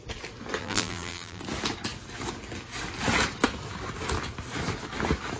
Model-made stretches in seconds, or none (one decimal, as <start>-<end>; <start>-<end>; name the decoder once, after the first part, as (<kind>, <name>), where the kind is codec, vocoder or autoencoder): 0.6-1.4 (vocoder, BigVGAN v2)